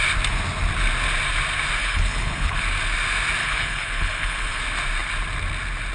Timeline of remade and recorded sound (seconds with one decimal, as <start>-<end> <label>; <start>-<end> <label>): 0.0-1.8 recorded; 1.8-2.6 remade; 2.6-3.4 recorded; 3.4-4.6 remade; 4.6-5.9 recorded